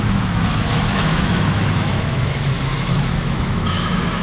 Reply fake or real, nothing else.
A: fake